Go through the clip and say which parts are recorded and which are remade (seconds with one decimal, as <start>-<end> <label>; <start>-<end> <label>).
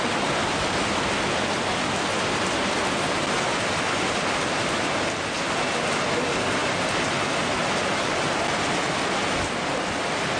0.0-10.4 recorded